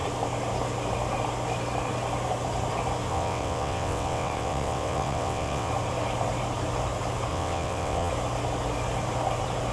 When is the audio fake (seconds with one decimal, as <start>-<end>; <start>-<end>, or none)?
3.1-5.7; 7.3-8.1